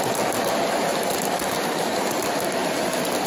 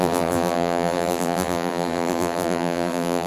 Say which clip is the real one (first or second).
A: first